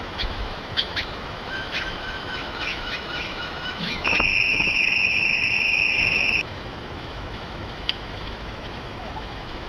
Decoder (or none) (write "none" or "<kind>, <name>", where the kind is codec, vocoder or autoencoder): autoencoder, DAC-VAE